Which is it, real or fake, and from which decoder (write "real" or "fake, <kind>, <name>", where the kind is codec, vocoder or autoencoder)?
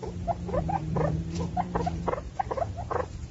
fake, vocoder, BigVGAN v2